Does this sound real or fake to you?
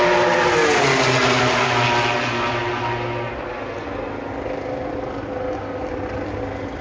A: real